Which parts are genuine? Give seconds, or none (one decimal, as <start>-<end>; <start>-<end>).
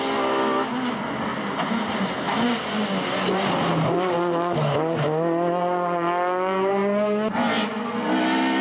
0.0-8.6